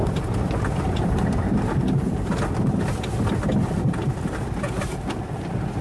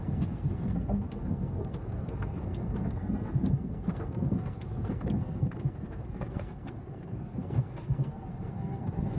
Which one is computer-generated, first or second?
second